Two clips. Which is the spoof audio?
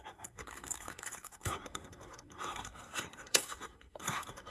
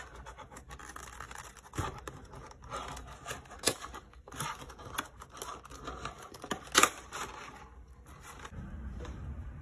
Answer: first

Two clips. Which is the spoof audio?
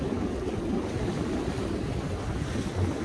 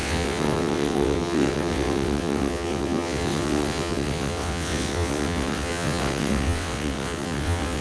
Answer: second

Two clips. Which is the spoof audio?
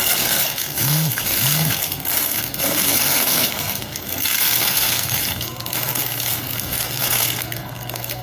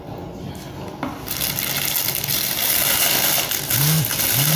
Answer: first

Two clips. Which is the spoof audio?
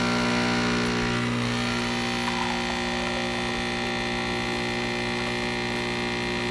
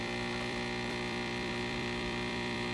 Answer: second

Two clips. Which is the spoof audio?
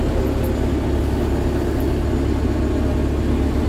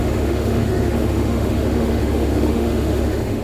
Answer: second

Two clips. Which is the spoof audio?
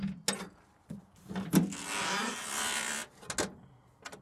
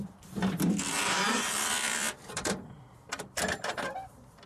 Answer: second